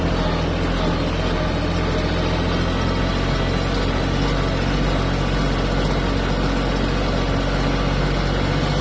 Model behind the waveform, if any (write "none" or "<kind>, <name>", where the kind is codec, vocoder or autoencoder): none